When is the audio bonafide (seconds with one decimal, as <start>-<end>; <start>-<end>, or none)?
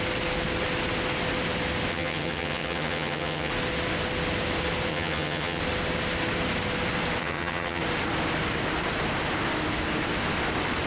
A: 0.0-1.9; 3.5-4.9; 5.6-7.2; 7.8-10.9